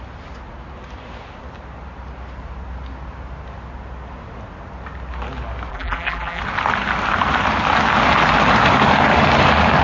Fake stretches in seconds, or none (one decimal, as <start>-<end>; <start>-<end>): 5.7-6.4